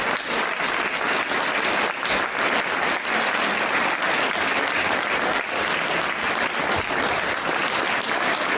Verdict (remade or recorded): recorded